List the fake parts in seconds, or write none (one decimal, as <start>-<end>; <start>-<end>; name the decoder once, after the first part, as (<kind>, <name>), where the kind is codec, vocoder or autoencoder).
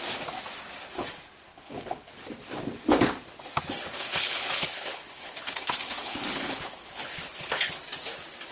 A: 1.5-2.2 (codec, HILCodec); 3.9-7.8